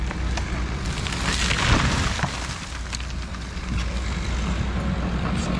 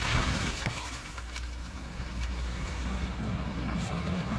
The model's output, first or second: second